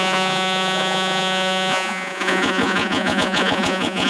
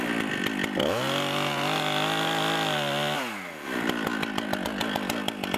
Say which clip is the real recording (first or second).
second